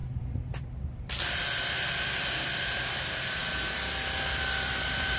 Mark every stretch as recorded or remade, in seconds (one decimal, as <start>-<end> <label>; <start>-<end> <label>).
0.0-3.4 remade; 3.4-5.2 recorded